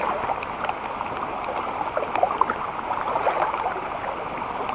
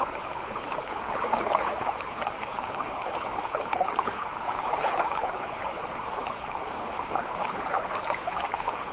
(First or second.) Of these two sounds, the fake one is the second